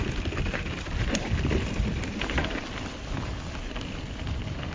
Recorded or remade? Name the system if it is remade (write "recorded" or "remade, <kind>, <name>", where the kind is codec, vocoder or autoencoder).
recorded